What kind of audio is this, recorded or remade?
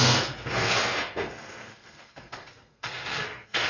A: remade